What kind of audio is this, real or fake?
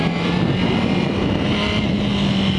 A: real